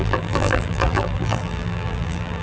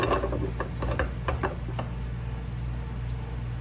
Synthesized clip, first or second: first